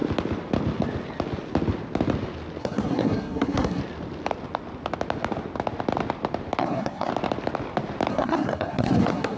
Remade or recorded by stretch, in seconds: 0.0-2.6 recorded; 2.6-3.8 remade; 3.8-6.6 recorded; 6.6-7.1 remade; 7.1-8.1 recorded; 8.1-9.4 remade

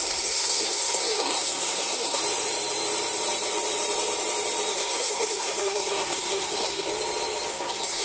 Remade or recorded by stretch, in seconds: 0.0-2.2 remade; 2.2-4.7 recorded; 4.7-6.9 remade; 6.9-7.5 recorded; 7.5-8.0 remade

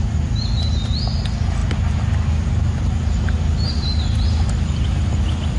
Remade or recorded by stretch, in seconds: 0.0-5.6 recorded

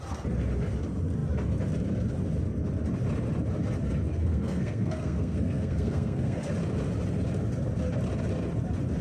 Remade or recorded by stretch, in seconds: 0.0-4.1 recorded; 4.1-6.5 remade; 6.5-9.0 recorded

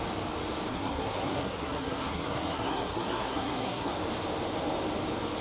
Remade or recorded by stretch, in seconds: 0.0-0.7 recorded; 0.7-3.9 remade; 3.9-5.4 recorded

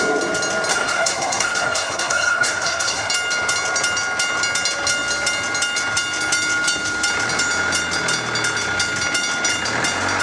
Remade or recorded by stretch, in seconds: 0.0-0.7 recorded; 0.7-3.1 remade; 3.1-10.2 recorded

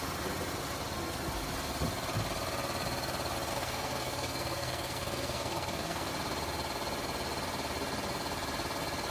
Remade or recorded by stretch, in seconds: 0.0-3.5 recorded; 3.5-6.1 remade; 6.1-9.1 recorded